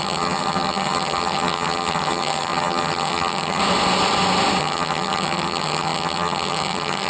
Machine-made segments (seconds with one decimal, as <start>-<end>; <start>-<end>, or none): 0.0-3.6; 4.6-7.1